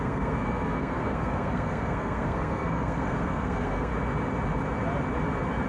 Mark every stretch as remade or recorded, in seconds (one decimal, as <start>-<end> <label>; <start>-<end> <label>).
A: 0.0-3.9 remade; 3.9-5.7 recorded